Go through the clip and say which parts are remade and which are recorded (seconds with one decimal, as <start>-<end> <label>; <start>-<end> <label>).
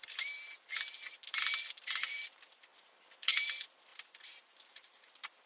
0.0-0.7 remade; 0.7-3.9 recorded; 3.9-5.5 remade